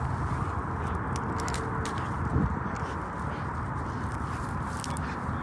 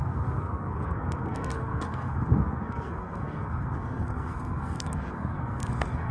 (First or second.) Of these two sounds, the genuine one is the first